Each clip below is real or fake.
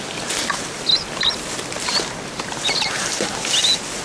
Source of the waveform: real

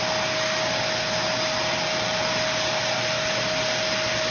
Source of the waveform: real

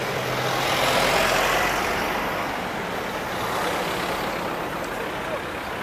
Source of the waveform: real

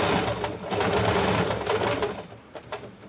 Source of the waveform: real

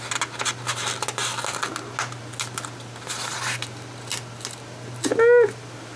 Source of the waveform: real